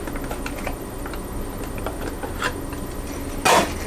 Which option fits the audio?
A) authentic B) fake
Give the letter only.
A